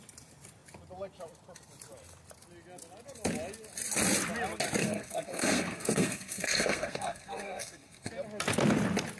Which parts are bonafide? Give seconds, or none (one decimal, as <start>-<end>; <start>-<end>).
0.0-4.8; 8.1-9.2